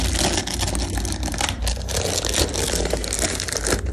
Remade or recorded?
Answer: recorded